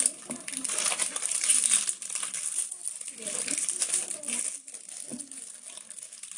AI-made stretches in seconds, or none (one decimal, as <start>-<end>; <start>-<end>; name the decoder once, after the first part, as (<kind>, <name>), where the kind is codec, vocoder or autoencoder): none